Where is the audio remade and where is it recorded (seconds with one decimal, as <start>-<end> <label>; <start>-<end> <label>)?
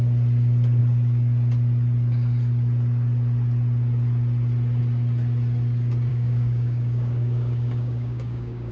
0.0-6.1 recorded; 6.1-8.7 remade